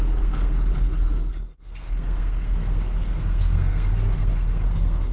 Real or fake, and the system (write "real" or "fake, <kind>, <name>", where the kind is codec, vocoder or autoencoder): fake, codec, SNAC